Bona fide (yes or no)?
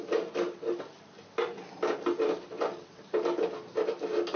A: yes